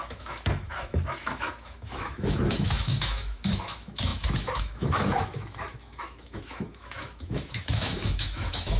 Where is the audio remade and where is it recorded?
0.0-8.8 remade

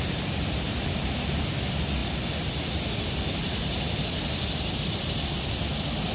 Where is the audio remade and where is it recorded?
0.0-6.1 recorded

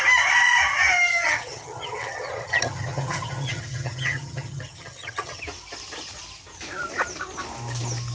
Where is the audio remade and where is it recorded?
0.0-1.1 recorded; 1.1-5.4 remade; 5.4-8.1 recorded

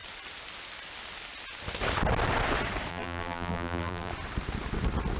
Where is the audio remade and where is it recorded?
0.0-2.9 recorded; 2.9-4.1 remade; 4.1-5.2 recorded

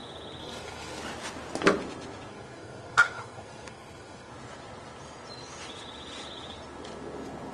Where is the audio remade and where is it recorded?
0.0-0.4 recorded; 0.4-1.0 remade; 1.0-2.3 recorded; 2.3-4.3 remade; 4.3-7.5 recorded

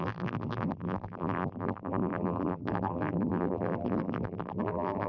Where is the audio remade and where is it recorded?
0.0-5.1 remade

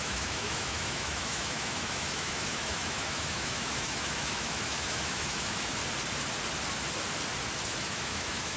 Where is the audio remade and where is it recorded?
0.0-5.8 remade; 5.8-7.8 recorded; 7.8-8.6 remade